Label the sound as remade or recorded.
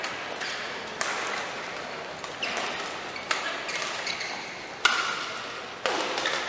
recorded